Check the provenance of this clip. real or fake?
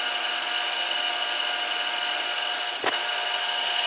real